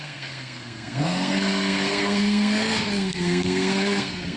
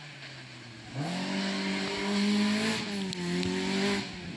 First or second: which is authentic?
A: second